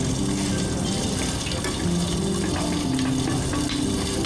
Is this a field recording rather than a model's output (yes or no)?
yes